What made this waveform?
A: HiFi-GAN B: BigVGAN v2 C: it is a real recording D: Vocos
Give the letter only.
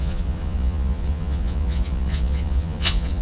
D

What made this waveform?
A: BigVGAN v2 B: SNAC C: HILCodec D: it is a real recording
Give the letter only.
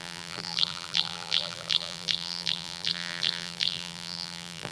A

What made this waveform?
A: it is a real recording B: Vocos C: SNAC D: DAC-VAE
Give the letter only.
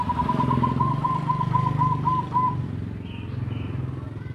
A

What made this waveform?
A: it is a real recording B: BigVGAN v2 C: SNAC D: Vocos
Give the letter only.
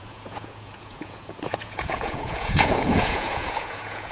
D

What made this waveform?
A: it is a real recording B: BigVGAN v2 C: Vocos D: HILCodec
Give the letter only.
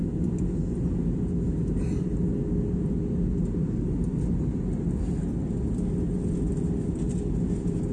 A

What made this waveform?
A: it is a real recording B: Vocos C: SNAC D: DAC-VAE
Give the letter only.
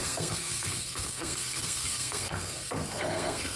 C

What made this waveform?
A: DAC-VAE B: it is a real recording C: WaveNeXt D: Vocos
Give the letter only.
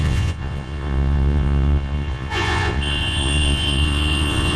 D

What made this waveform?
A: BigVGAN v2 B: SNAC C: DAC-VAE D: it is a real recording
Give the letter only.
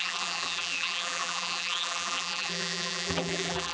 A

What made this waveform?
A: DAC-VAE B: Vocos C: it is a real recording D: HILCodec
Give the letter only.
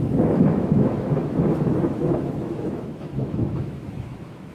A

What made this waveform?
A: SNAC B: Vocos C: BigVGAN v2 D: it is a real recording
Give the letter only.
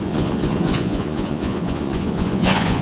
B